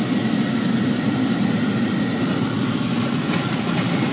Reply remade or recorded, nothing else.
recorded